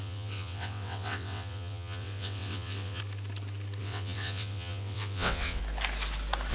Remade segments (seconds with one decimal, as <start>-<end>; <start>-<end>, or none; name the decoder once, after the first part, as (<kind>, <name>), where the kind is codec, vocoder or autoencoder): 0.0-3.0 (vocoder, WaveNeXt); 3.8-5.6